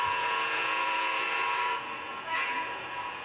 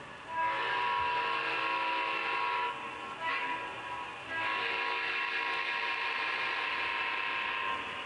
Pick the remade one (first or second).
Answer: first